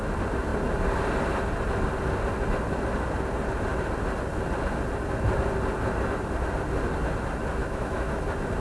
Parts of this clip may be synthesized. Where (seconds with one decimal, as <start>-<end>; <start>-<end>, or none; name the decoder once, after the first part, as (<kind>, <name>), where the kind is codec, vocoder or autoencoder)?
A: 7.6-8.2 (autoencoder, DAC-VAE)